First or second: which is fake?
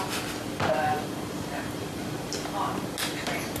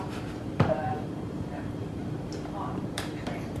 second